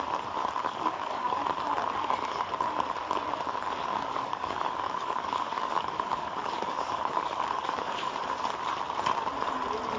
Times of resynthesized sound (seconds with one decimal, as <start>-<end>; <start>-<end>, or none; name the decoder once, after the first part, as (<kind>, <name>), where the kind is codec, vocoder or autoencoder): 0.6-1.4 (codec, DAC); 3.9-8.1